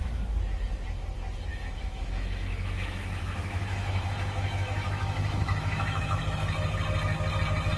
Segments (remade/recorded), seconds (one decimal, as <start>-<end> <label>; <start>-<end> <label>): 0.0-1.5 recorded; 1.5-6.2 remade; 6.2-7.8 recorded